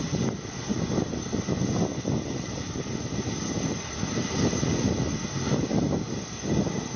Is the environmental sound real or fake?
real